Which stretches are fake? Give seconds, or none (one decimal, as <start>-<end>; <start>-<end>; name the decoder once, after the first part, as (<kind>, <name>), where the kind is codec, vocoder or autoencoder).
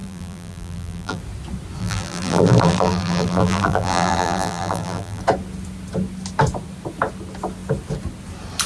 0.0-1.2 (vocoder, BigVGAN v2); 1.8-5.2